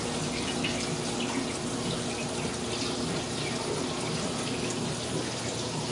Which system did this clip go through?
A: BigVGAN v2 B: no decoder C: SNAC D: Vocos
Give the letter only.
B